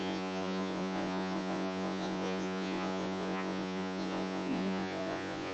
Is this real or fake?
fake